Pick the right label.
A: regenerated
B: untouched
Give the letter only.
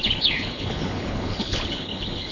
A